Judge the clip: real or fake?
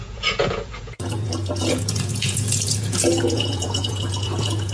fake